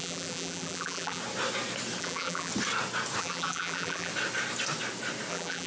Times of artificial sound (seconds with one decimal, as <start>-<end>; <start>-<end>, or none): 0.0-1.2; 2.0-2.5; 3.2-4.1; 5.3-5.7